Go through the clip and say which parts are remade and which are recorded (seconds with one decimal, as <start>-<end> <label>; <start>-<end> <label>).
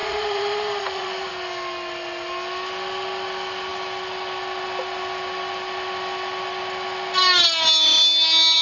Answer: 0.0-1.3 remade; 1.3-8.6 recorded